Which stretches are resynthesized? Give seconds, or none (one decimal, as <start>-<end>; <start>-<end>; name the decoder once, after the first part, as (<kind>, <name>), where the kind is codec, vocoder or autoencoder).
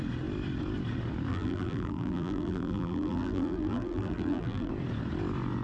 1.3-4.7 (vocoder, BigVGAN v2)